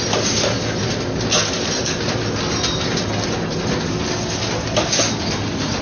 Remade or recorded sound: recorded